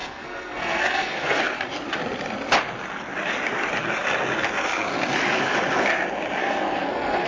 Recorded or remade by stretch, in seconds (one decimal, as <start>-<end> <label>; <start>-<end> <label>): 0.0-1.4 remade; 1.4-6.4 recorded; 6.4-7.3 remade

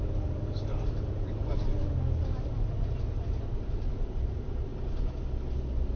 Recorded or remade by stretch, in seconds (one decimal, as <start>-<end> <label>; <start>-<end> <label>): 0.0-1.4 remade; 1.4-3.6 recorded; 3.6-4.7 remade; 4.7-6.0 recorded

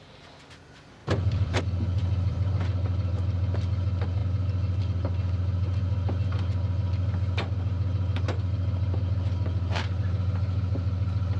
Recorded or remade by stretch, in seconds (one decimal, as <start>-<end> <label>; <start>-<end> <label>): 0.0-1.0 recorded; 1.0-1.6 remade; 1.6-2.0 recorded; 2.0-2.5 remade; 2.5-11.4 recorded

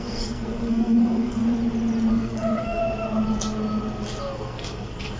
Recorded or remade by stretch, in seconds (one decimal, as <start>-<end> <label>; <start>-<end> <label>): 0.0-1.4 remade; 1.4-2.1 recorded; 2.1-2.8 remade; 2.8-4.2 recorded; 4.2-5.2 remade

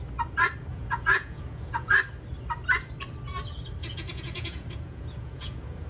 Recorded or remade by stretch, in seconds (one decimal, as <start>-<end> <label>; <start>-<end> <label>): 0.0-0.7 recorded; 0.7-1.9 remade; 1.9-3.8 recorded; 3.8-5.9 remade